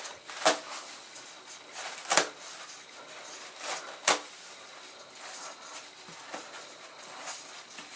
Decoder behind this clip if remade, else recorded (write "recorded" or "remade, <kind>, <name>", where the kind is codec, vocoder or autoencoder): recorded